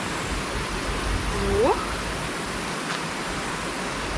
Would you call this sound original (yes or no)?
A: yes